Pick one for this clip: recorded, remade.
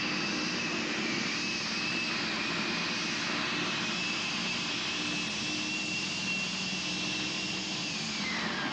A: recorded